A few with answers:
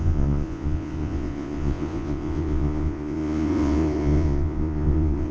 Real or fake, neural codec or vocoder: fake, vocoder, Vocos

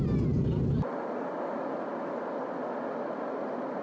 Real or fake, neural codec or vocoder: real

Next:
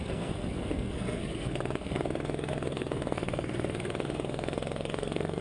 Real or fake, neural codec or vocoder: fake, codec, SNAC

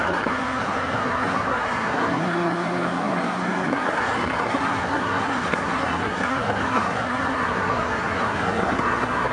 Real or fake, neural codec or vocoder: fake, codec, SNAC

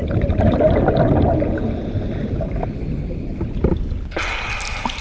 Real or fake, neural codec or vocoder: real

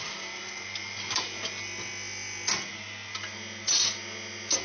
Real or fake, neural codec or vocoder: real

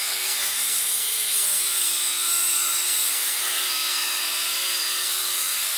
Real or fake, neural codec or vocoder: fake, codec, SNAC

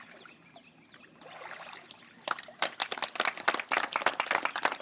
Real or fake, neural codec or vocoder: real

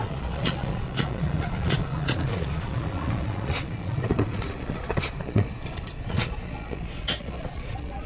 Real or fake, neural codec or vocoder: fake, vocoder, Vocos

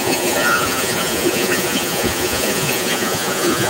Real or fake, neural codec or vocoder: fake, vocoder, Vocos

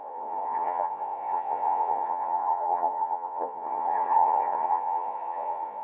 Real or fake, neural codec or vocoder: fake, vocoder, Vocos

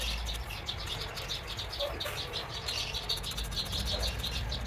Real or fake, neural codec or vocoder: real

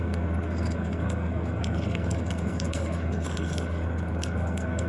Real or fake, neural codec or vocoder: fake, codec, SNAC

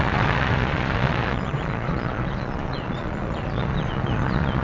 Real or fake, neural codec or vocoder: fake, vocoder, Vocos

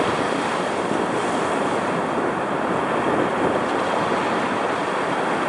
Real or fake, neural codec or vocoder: real